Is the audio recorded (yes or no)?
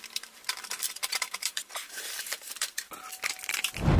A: no